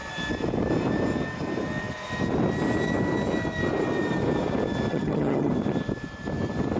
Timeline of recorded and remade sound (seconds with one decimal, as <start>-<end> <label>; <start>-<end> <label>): 0.0-4.9 recorded; 4.9-5.5 remade; 5.5-6.8 recorded